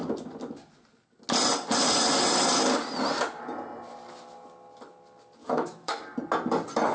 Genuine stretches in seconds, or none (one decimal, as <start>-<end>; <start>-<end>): 0.0-5.4; 6.0-6.9